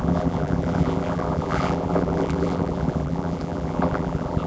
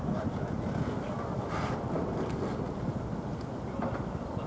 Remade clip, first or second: first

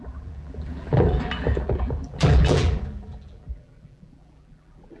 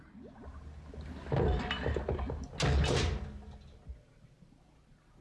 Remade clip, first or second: first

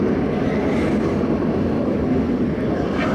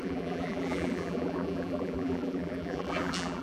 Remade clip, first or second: second